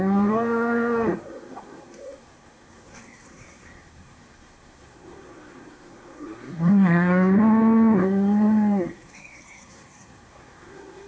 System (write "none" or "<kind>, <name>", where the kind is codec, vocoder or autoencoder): codec, SNAC